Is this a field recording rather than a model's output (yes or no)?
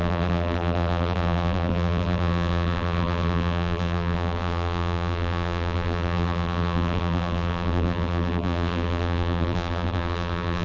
no